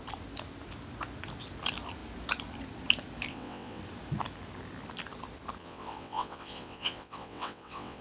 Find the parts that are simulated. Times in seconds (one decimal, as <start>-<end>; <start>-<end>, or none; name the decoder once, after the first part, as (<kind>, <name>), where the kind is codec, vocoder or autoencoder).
3.3-3.8 (vocoder, WaveNeXt); 5.6-8.0